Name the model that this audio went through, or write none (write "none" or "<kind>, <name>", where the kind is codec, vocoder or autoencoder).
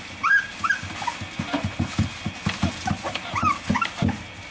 none